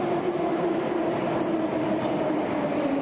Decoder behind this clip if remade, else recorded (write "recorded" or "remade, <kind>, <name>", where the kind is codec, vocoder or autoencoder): recorded